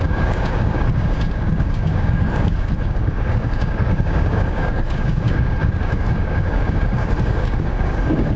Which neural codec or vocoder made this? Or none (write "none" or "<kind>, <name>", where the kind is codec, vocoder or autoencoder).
codec, DAC